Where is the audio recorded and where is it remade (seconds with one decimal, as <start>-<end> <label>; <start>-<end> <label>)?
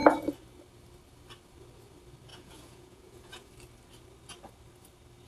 0.0-2.3 recorded; 2.3-3.5 remade; 3.5-5.3 recorded